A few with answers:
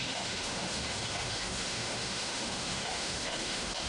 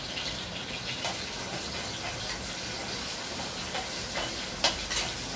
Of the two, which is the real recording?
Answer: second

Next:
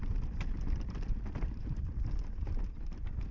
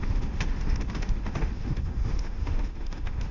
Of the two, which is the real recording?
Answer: first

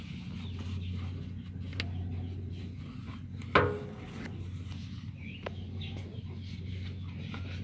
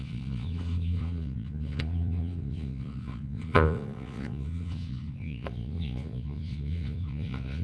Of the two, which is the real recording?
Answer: first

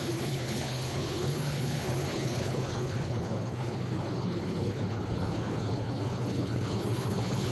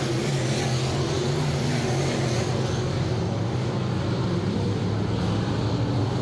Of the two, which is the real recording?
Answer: second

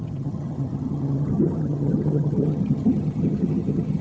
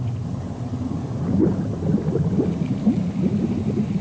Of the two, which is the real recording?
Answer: second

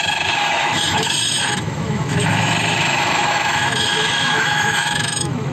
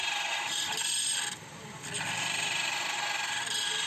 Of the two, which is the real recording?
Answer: second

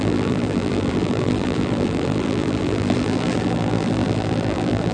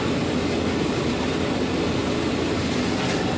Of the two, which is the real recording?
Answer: second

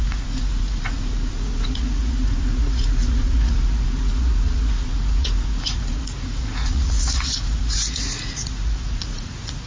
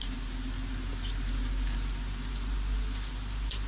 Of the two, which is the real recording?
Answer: second